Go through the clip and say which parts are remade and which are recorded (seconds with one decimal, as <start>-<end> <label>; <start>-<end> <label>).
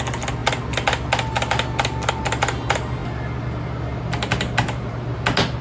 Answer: 0.0-5.6 recorded